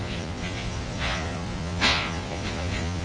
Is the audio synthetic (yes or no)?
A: yes